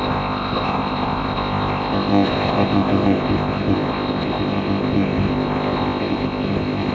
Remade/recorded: remade